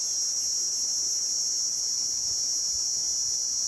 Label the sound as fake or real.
real